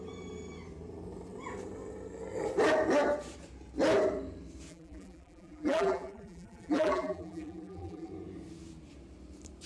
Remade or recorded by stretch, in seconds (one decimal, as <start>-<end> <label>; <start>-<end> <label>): 0.0-4.7 recorded; 4.7-8.1 remade; 8.1-9.7 recorded